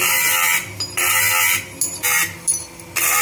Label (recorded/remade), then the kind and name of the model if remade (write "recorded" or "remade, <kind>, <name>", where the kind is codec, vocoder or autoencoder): recorded